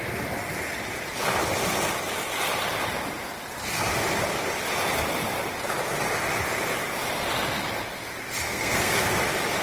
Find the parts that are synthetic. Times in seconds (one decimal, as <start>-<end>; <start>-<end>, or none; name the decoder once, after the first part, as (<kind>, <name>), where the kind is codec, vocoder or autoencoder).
8.5-9.1 (codec, SNAC)